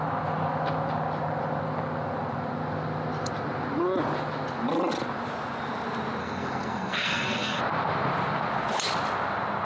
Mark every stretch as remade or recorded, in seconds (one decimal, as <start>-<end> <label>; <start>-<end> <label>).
0.0-6.2 recorded; 6.2-7.6 remade; 7.6-9.6 recorded